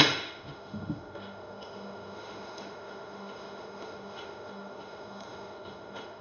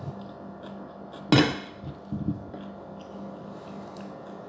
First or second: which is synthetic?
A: first